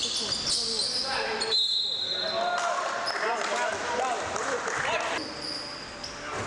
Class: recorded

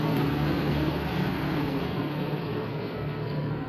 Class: remade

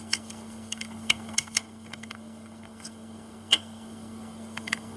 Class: remade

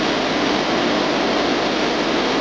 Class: recorded